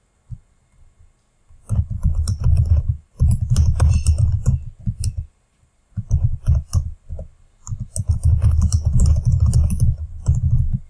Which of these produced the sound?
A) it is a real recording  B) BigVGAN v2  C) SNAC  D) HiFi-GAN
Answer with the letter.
A